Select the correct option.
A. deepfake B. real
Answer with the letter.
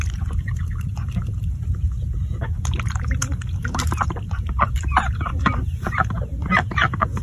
A